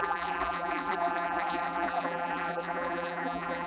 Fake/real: fake